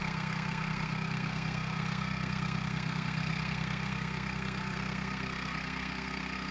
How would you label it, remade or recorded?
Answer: remade